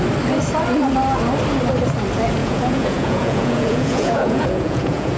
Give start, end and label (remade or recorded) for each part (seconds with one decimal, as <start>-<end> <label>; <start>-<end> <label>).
0.0-2.4 recorded; 2.4-5.2 remade